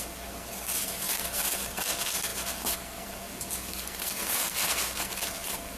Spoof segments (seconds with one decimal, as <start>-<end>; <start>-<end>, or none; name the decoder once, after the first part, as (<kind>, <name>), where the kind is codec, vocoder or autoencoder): 0.0-5.8 (codec, SNAC)